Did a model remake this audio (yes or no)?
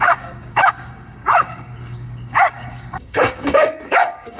yes